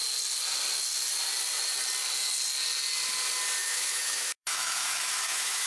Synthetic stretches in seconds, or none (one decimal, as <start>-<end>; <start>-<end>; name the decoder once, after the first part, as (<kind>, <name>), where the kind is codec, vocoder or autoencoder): 3.6-5.7 (autoencoder, DAC-VAE)